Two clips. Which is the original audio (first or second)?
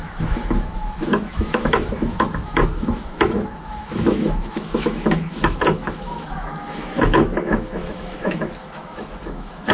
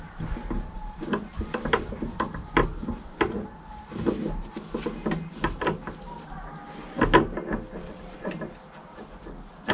second